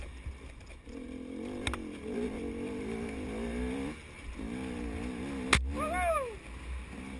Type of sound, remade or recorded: recorded